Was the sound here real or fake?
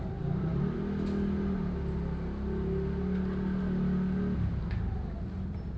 real